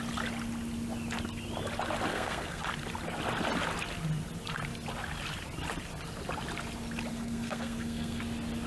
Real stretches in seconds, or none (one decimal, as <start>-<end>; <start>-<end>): 0.0-2.1; 2.6-7.1; 8.2-8.7

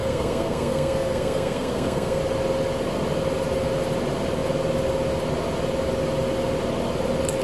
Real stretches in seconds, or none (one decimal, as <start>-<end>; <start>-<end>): 2.2-7.4

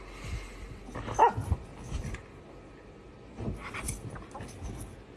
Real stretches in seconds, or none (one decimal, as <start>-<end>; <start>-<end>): 0.0-5.2

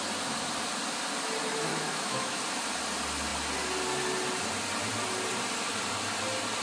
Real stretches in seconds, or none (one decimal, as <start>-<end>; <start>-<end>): 0.0-1.7; 2.4-6.6

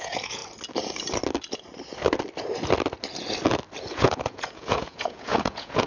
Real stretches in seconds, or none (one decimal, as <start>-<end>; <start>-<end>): 0.4-3.9